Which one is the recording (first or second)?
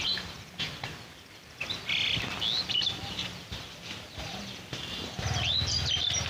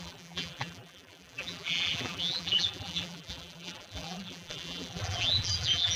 first